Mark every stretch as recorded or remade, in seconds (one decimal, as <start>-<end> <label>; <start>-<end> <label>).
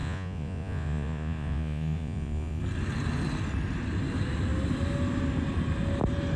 0.0-2.6 remade; 2.6-6.4 recorded